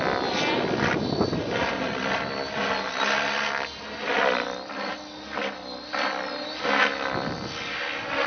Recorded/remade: recorded